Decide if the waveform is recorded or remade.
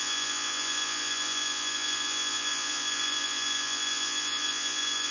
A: remade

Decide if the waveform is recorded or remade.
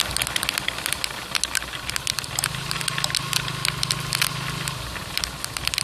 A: recorded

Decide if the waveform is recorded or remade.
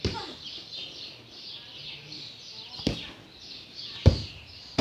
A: recorded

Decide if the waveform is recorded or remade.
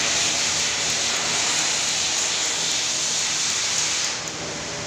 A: recorded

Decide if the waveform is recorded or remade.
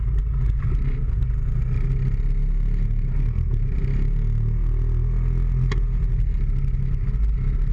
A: recorded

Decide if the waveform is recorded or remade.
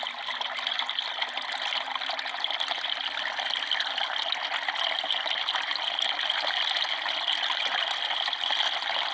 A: recorded